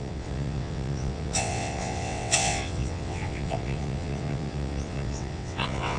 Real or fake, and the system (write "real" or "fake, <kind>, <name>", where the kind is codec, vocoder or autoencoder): fake, vocoder, WaveNeXt